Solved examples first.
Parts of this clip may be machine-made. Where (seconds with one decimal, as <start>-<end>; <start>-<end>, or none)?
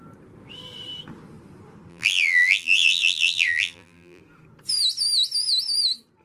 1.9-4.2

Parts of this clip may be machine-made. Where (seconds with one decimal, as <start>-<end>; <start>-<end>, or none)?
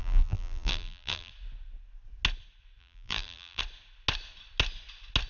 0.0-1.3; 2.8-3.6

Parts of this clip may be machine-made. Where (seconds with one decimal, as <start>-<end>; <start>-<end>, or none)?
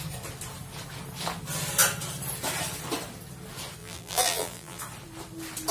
3.8-4.8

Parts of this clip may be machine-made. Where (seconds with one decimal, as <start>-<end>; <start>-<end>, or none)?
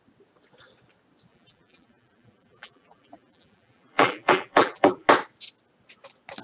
1.3-5.1